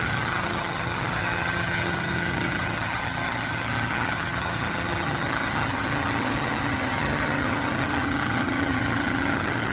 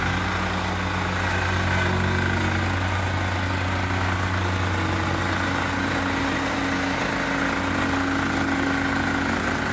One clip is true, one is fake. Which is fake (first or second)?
first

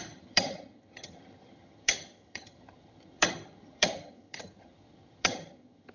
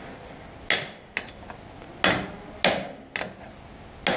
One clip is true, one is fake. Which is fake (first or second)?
first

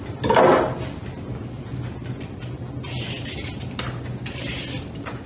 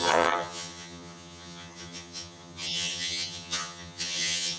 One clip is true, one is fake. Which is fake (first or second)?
second